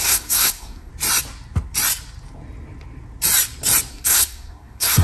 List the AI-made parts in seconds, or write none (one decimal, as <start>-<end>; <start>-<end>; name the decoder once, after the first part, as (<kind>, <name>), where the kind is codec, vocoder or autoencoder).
0.0-0.9 (codec, SNAC); 3.9-5.0